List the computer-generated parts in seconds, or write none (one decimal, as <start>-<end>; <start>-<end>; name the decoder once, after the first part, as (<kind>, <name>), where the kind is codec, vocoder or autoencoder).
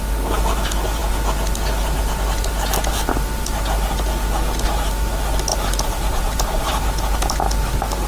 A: 5.5-6.8 (vocoder, BigVGAN v2)